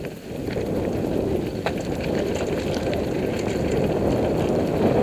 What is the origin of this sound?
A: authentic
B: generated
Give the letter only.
A